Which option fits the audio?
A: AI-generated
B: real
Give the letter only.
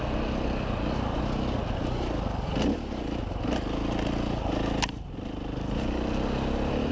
B